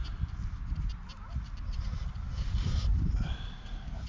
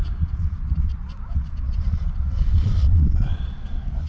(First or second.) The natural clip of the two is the first